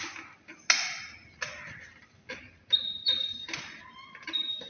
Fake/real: real